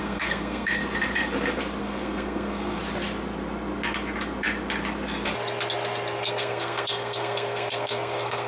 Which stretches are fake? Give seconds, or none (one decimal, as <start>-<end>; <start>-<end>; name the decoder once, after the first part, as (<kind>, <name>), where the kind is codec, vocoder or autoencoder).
0.0-0.8 (codec, SNAC); 1.8-2.8; 6.3-8.5